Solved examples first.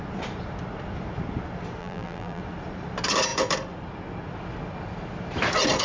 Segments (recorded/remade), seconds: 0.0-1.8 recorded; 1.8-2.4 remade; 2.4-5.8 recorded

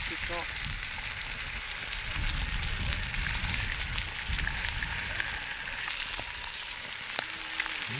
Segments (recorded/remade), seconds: 0.0-8.0 recorded

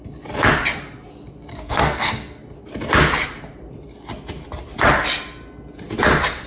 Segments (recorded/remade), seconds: 0.0-1.5 recorded; 1.5-2.4 remade; 2.4-6.5 recorded